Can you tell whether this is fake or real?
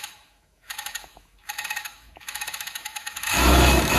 fake